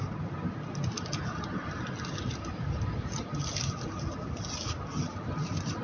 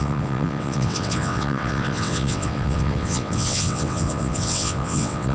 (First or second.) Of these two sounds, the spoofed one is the second